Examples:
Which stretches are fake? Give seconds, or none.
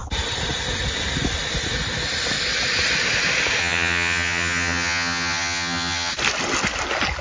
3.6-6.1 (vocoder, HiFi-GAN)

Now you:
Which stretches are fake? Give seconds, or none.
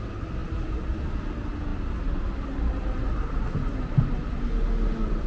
none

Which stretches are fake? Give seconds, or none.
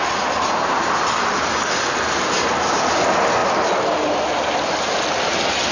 none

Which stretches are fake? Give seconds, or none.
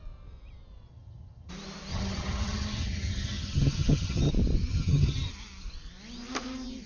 0.9-1.5 (vocoder, HiFi-GAN); 1.9-4.3; 4.7-5.3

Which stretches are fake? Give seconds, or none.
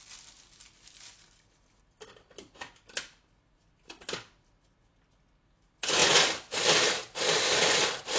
none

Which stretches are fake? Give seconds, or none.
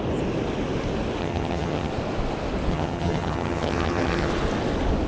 1.2-1.9 (vocoder, HiFi-GAN); 2.7-4.3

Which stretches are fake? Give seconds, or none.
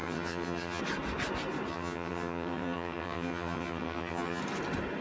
0.0-0.8 (vocoder, HiFi-GAN); 1.7-4.4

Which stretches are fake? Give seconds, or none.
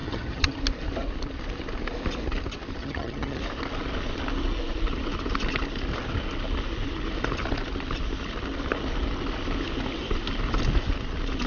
0.0-0.6 (vocoder, HiFi-GAN); 2.8-3.4